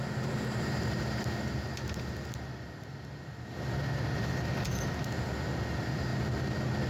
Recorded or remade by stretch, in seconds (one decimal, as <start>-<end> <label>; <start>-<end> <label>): 0.0-6.9 recorded